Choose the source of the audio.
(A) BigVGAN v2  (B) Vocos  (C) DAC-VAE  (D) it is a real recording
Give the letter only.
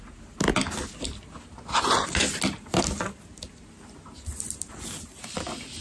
D